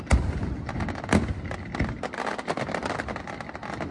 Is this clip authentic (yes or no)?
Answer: yes